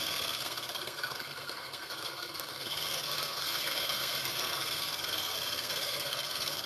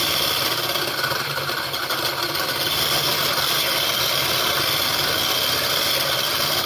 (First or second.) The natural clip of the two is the second